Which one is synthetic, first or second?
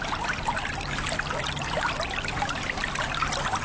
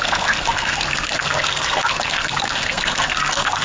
second